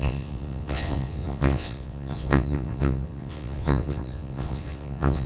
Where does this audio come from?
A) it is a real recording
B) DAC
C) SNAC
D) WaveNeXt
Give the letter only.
D